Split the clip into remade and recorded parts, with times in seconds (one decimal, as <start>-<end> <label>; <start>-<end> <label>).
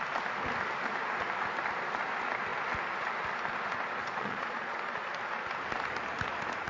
0.0-4.0 recorded; 4.0-4.8 remade; 4.8-6.7 recorded